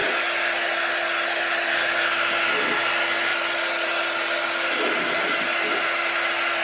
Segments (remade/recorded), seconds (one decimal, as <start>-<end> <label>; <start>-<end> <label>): 0.0-6.6 recorded